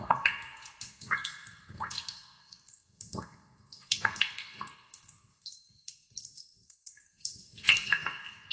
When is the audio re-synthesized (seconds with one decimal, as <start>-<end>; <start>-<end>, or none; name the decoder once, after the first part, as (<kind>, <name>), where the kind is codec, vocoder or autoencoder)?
0.0-8.5 (codec, SNAC)